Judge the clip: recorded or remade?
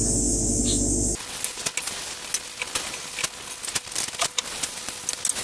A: recorded